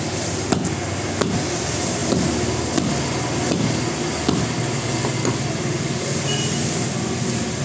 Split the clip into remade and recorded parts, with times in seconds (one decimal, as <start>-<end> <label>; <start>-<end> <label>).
0.0-7.6 recorded